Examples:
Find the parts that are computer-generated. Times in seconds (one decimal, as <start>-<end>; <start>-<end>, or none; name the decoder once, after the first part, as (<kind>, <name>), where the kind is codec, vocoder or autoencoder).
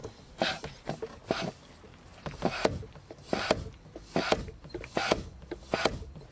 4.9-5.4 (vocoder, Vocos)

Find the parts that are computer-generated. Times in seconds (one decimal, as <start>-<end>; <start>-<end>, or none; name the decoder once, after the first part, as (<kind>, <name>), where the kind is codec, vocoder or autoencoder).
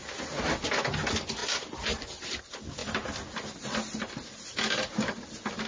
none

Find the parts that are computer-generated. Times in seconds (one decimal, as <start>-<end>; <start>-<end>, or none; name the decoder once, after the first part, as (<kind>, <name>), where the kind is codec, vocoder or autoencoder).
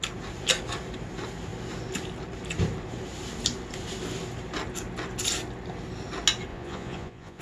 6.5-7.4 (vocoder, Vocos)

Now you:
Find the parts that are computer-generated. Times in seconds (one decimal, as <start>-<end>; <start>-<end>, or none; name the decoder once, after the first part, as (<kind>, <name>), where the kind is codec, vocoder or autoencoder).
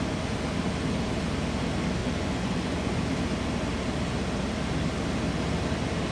2.0-3.0 (vocoder, Vocos)